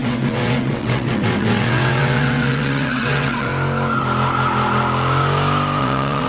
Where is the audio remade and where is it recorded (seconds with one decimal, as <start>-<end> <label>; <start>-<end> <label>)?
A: 0.0-3.5 remade; 3.5-5.8 recorded; 5.8-6.3 remade